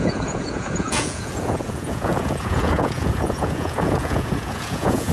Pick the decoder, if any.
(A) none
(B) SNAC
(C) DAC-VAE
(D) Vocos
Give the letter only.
D